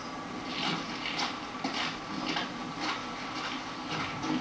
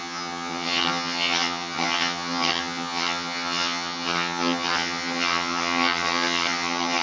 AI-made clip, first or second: second